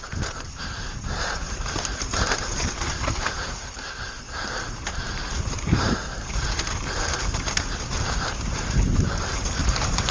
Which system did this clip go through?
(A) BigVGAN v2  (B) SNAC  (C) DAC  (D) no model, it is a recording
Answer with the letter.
A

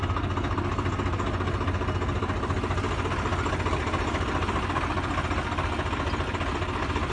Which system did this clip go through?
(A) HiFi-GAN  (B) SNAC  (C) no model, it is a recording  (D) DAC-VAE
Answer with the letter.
C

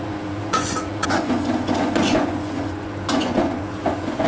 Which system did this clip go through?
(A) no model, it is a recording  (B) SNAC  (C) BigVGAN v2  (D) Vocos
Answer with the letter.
D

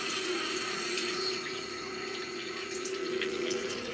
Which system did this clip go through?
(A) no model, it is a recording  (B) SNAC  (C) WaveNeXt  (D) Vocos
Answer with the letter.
D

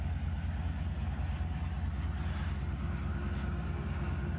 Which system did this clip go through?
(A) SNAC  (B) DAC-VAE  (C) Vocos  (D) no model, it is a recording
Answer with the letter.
D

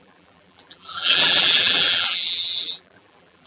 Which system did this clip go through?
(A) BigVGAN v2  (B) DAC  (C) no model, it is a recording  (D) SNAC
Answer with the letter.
A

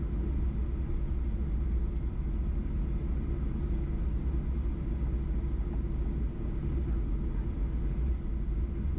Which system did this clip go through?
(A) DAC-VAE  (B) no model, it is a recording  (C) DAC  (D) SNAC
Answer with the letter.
B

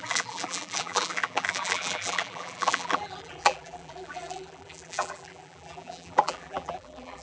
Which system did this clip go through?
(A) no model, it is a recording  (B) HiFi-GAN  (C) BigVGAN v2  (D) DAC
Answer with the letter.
C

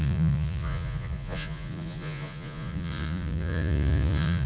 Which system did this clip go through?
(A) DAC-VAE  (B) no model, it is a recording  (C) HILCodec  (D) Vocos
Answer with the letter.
D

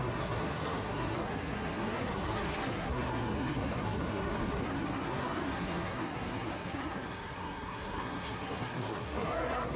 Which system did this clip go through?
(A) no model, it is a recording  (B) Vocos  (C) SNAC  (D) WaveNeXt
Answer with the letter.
C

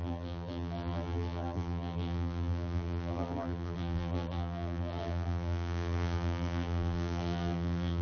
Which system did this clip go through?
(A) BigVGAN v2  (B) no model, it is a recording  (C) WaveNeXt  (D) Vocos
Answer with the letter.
A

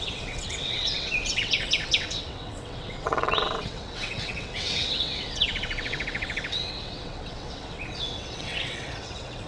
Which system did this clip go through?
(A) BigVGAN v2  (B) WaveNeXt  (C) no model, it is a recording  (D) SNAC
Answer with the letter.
B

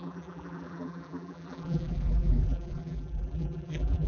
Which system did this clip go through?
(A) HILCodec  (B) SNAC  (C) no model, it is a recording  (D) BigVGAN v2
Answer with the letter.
D